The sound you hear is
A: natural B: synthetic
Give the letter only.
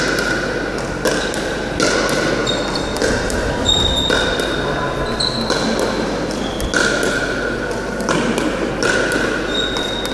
A